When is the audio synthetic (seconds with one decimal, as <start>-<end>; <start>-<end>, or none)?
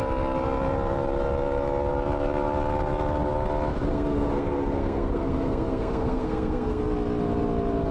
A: 3.9-6.8